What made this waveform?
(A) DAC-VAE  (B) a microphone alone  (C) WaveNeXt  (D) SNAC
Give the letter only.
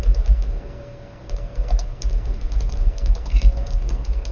D